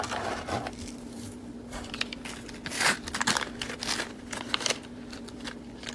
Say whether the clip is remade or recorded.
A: remade